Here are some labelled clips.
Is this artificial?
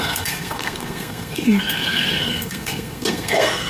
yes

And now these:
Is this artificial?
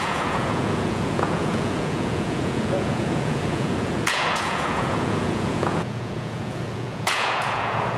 yes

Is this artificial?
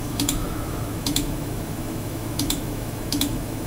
yes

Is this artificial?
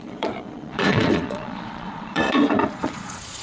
yes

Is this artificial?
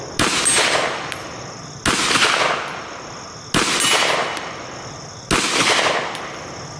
no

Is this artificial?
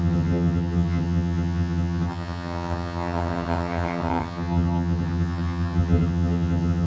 yes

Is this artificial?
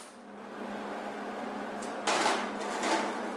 no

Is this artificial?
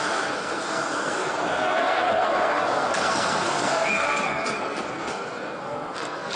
yes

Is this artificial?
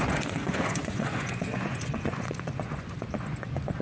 yes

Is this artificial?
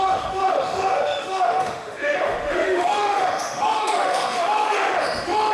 yes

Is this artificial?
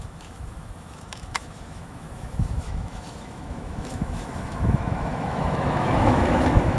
yes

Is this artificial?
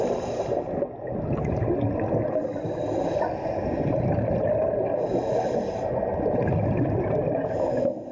no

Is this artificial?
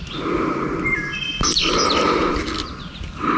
no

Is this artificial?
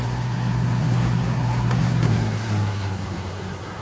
yes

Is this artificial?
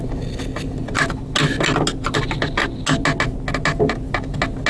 no